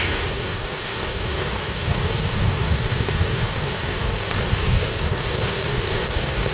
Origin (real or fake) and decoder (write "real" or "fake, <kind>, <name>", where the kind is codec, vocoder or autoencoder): fake, codec, DAC